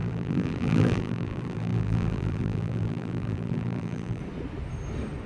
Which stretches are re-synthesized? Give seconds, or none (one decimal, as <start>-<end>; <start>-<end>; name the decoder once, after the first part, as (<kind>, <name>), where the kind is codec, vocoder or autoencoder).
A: 0.0-4.2 (vocoder, BigVGAN v2)